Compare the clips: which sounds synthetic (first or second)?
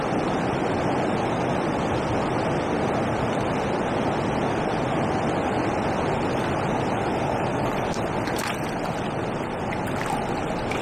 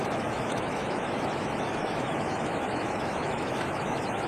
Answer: second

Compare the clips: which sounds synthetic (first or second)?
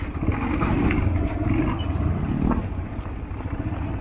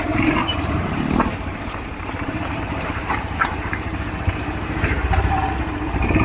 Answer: second